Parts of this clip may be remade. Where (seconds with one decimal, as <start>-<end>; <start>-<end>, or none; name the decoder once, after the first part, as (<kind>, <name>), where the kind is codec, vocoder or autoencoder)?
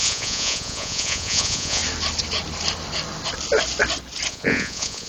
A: 0.0-1.8 (vocoder, Vocos); 4.3-5.1